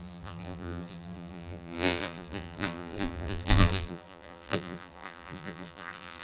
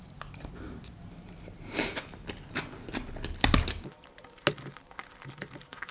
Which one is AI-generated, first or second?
first